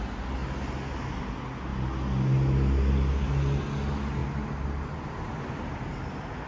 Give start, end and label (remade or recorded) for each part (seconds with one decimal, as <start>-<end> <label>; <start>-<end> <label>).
0.0-6.5 recorded

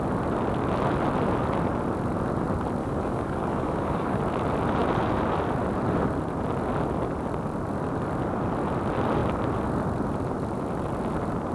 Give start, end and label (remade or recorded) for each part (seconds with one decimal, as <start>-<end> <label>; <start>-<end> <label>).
0.0-2.8 recorded; 2.8-4.2 remade; 4.2-11.5 recorded